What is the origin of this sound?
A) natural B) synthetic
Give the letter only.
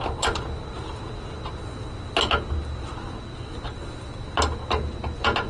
A